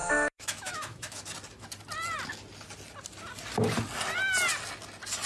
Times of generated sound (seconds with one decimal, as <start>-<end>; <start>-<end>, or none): 0.0-1.2